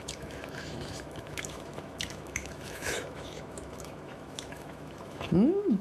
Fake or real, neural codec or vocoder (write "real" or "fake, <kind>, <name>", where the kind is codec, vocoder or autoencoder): fake, autoencoder, DAC-VAE